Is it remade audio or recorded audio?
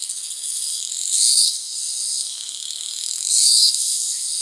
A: remade